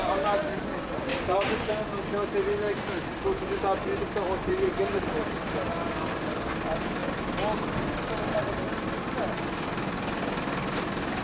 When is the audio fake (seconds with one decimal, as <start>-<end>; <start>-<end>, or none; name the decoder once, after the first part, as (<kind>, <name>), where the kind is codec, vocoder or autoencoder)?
1.1-1.7 (vocoder, BigVGAN v2); 4.4-5.1

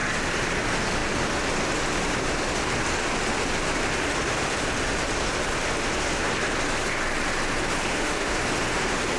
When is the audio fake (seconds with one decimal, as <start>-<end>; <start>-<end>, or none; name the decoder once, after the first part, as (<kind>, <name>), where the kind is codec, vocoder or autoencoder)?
7.9-8.4 (autoencoder, DAC-VAE)

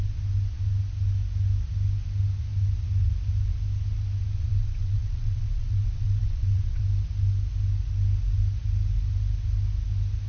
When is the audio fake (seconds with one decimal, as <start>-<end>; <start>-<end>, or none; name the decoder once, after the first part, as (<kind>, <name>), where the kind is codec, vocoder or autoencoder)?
4.5-6.8 (vocoder, WaveNeXt)

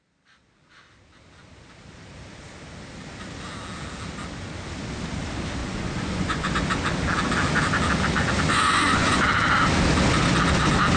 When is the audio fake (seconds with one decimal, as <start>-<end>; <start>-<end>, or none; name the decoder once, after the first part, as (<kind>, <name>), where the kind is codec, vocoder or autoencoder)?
5.6-6.5 (vocoder, Vocos); 8.5-9.2

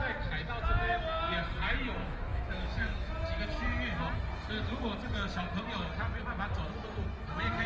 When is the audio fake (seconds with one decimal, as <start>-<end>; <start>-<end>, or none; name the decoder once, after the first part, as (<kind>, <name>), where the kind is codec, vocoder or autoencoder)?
2.0-3.1 (autoencoder, DAC-VAE)

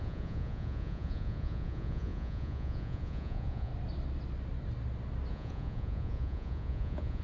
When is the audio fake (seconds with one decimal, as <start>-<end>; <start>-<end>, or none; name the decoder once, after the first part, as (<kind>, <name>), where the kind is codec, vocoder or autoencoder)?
0.0-3.7 (vocoder, Vocos); 5.3-7.2

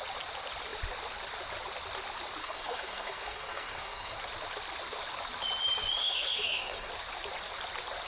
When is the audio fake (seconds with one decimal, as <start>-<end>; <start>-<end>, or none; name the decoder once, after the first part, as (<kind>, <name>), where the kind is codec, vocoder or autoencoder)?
2.4-4.2 (codec, SNAC); 6.0-6.9